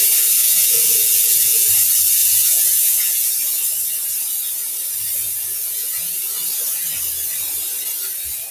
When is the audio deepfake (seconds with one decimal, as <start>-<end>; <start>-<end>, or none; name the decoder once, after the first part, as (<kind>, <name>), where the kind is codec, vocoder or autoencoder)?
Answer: 0.4-1.7 (vocoder, Vocos); 2.2-3.3; 5.2-6.2